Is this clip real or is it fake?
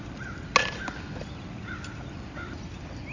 real